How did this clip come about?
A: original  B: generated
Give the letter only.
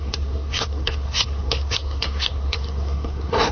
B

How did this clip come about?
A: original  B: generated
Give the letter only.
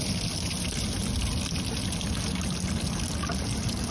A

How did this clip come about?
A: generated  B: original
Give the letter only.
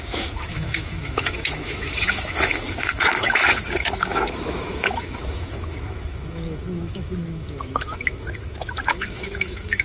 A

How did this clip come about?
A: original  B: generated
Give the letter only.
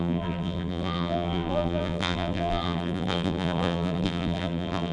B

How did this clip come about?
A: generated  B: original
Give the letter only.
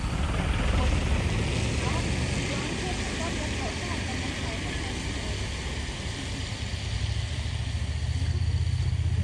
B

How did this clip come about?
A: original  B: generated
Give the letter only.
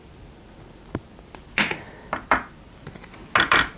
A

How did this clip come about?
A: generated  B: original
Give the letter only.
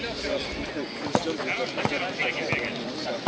B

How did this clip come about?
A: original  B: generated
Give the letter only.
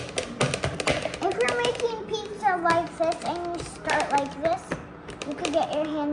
A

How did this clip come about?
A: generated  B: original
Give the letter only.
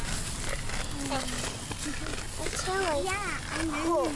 B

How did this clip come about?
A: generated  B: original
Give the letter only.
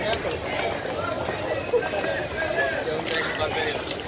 B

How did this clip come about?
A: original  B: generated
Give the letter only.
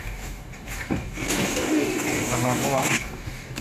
B